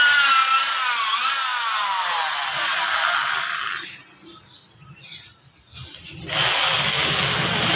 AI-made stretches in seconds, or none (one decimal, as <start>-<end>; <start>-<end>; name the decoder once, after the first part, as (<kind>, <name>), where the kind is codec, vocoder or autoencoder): none